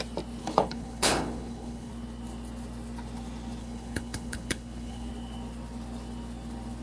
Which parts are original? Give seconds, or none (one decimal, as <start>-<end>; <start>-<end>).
0.0-0.4; 1.9-3.6; 5.1-6.8